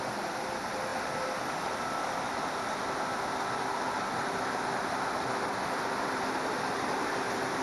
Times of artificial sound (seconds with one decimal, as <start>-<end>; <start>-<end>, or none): none